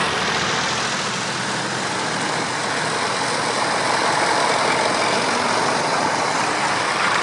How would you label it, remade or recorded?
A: recorded